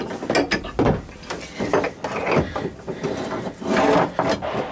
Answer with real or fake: real